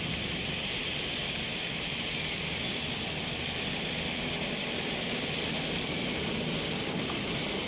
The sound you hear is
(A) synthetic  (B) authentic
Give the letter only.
B